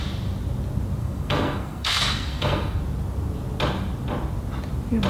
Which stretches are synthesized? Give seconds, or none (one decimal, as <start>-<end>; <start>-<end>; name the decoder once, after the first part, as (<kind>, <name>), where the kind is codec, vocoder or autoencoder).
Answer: 1.0-2.8 (codec, SNAC)